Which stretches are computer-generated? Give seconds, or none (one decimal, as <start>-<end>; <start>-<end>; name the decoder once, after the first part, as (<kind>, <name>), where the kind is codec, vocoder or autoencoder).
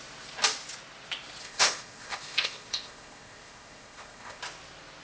1.4-4.4 (codec, ZipCodec)